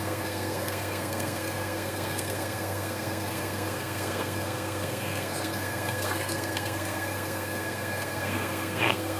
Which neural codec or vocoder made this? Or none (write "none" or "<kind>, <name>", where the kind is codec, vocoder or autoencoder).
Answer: codec, SNAC